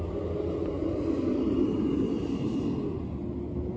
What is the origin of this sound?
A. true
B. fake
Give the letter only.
A